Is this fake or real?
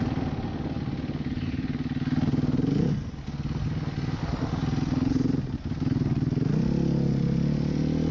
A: real